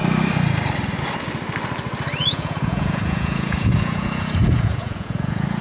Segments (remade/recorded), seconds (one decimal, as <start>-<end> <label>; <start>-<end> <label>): 0.0-2.2 recorded; 2.2-5.6 remade